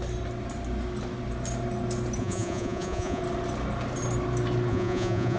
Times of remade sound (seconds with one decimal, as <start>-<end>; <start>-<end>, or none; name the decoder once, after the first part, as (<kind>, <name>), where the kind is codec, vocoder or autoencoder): 2.2-3.2 (vocoder, Vocos); 4.7-5.4